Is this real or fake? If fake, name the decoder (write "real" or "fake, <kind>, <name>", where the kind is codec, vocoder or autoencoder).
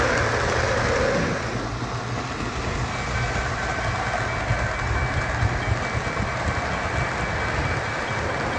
real